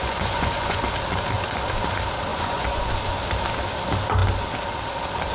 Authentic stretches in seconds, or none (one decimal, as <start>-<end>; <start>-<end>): 0.8-2.3; 2.9-5.3